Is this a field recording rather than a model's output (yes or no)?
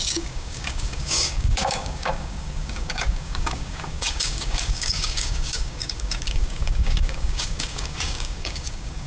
no